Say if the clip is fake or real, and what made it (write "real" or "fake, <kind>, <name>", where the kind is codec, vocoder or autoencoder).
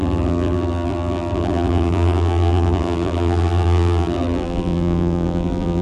fake, vocoder, BigVGAN v2